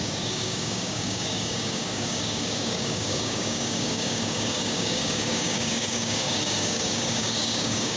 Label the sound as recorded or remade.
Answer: remade